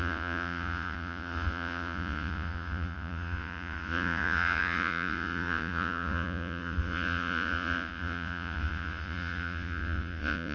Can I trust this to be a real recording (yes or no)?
no